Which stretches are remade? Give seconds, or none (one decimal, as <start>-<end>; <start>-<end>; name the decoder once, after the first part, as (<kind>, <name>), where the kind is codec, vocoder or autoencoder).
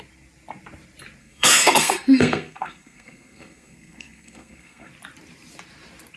1.2-4.9 (codec, SNAC)